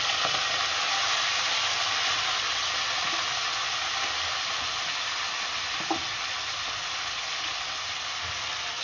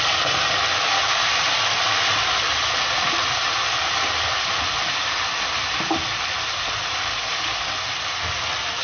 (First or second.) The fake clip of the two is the second